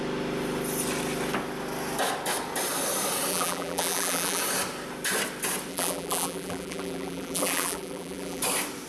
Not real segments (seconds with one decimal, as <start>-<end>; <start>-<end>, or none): 3.3-4.4; 5.7-8.4